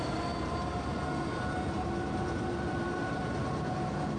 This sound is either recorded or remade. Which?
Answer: remade